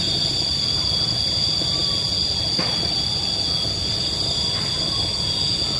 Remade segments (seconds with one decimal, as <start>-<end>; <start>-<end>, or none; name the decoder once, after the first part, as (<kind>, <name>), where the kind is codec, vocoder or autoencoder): none